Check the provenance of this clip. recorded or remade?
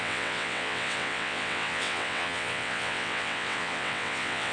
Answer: remade